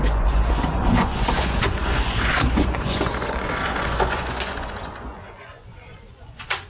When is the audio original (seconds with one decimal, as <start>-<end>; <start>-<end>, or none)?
none